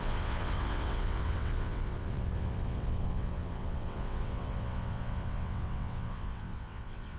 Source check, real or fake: fake